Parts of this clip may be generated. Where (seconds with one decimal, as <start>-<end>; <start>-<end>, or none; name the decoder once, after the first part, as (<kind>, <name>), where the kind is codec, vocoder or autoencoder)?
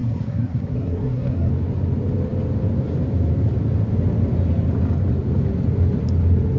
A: 0.0-1.5 (codec, SNAC)